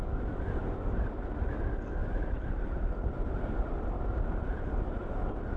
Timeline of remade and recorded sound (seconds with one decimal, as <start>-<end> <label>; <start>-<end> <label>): 0.0-2.0 recorded; 2.0-2.7 remade; 2.7-5.6 recorded